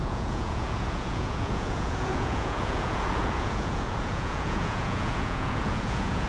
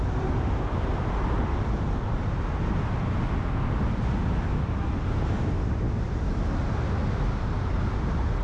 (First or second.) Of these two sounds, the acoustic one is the second